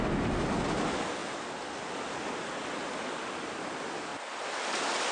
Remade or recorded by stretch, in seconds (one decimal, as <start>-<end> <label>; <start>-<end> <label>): 0.0-5.1 recorded